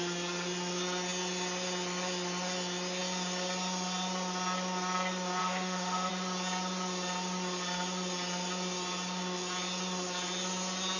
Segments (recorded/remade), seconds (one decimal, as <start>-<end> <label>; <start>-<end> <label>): 0.0-5.4 recorded; 5.4-6.1 remade; 6.1-11.0 recorded

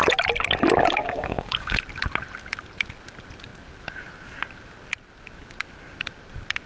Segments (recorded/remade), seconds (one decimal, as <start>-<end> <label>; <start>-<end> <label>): 0.0-1.0 recorded; 1.0-1.8 remade; 1.8-6.7 recorded

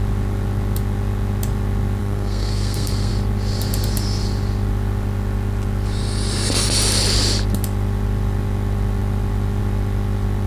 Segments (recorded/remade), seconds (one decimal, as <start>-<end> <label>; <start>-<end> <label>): 0.0-2.0 recorded; 2.0-3.1 remade; 3.1-10.5 recorded

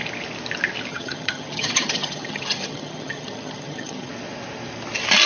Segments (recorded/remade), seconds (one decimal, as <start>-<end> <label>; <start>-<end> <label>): 0.0-0.9 recorded; 0.9-4.1 remade; 4.1-5.3 recorded

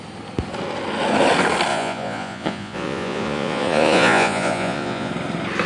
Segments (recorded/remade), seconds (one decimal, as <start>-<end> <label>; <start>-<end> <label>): 0.0-1.7 recorded; 1.7-5.1 remade; 5.1-5.7 recorded

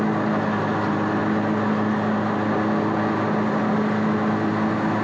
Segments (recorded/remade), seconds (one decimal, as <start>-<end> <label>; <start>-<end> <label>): 0.0-5.0 recorded

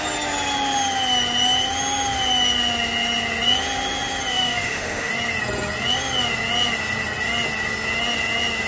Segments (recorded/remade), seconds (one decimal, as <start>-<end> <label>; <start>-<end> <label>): 0.0-4.3 recorded; 4.3-5.1 remade; 5.1-8.7 recorded

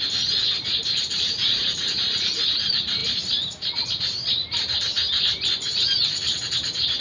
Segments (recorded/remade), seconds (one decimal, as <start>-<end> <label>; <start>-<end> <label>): 0.0-7.0 recorded